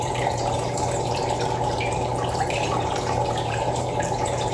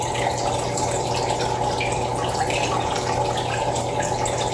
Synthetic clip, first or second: first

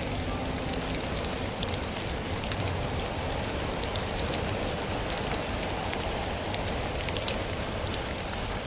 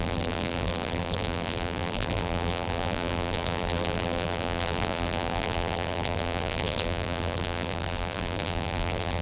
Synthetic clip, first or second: second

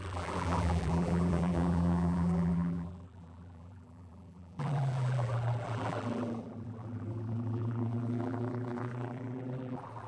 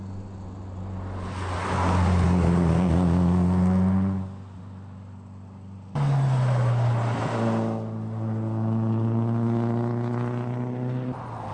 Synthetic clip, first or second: first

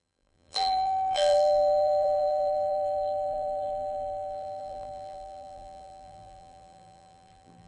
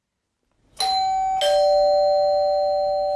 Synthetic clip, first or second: first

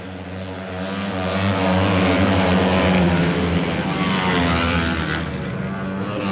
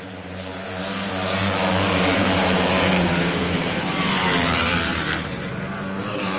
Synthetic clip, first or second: second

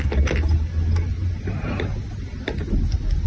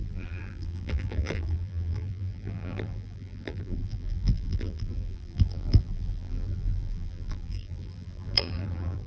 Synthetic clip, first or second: second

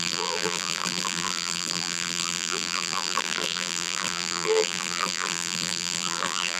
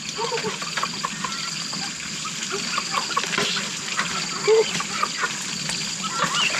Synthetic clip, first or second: first